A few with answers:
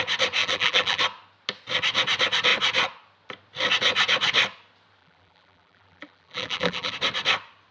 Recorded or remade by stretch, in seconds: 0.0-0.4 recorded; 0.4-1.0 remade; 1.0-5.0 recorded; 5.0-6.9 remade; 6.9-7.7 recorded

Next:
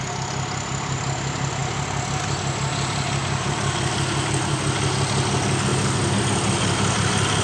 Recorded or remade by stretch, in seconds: 0.0-3.2 recorded; 3.2-4.6 remade; 4.6-7.4 recorded

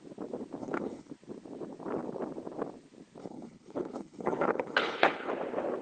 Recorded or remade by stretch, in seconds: 0.0-0.6 recorded; 0.6-1.1 remade; 1.1-3.2 recorded; 3.2-5.3 remade; 5.3-5.8 recorded

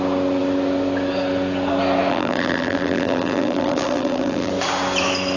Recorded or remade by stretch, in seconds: 0.0-2.1 recorded; 2.1-4.5 remade; 4.5-5.4 recorded

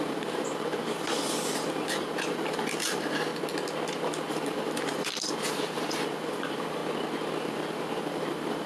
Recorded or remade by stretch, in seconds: 0.0-3.3 remade; 3.3-4.3 recorded; 4.3-6.8 remade; 6.8-7.4 recorded; 7.4-8.7 remade